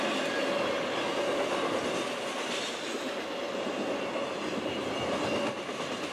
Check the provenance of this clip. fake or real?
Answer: real